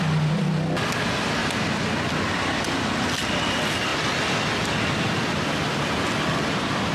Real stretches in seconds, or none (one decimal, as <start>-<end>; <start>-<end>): 0.0-6.9